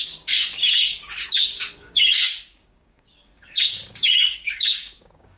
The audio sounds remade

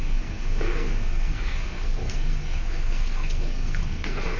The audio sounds remade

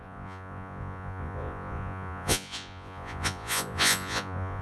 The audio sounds remade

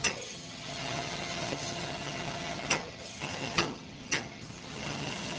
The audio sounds remade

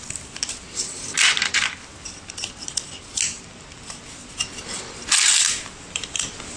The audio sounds recorded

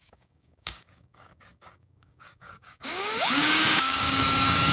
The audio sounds remade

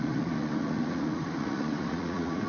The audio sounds remade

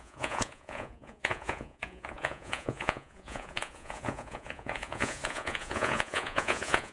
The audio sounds remade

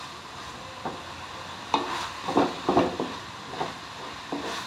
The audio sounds recorded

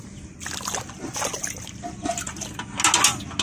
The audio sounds recorded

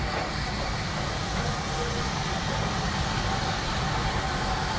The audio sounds recorded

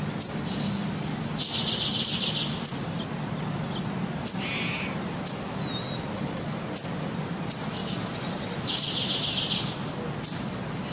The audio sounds recorded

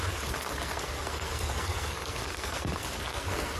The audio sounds remade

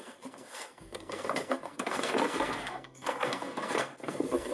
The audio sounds remade